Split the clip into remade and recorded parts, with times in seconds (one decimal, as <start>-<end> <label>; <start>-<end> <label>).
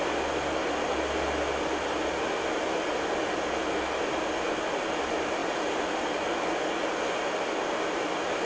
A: 0.0-8.5 recorded